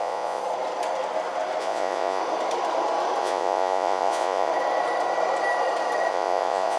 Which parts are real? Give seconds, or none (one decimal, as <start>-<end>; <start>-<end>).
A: 0.4-1.6; 2.2-3.2; 4.5-6.1